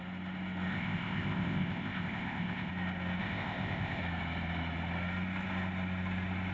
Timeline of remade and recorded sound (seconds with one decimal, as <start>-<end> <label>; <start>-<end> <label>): 0.0-0.7 recorded; 0.7-2.7 remade; 2.7-3.2 recorded; 3.2-4.0 remade; 4.0-6.5 recorded